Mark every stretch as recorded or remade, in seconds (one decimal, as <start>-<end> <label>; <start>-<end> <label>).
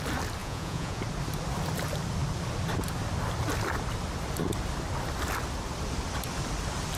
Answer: 0.0-0.4 recorded; 0.4-1.0 remade; 1.0-7.0 recorded